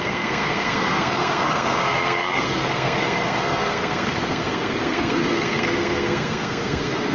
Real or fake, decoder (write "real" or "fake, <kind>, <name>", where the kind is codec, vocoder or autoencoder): fake, codec, SNAC